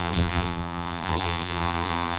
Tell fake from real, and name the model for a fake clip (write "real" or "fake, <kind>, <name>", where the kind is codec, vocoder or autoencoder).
fake, vocoder, BigVGAN v2